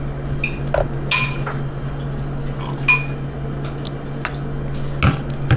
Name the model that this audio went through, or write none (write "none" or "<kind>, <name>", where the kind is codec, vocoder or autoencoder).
none